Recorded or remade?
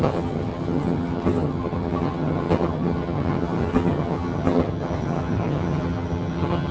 remade